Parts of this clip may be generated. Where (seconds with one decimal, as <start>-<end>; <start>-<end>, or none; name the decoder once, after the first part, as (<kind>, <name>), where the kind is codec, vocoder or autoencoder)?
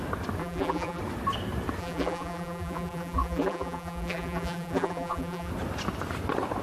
0.4-1.0 (vocoder, BigVGAN v2); 1.8-5.5